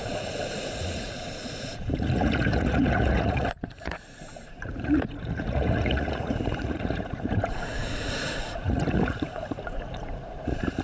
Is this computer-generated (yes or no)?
yes